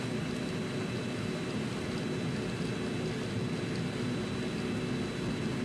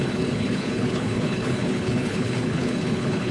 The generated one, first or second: second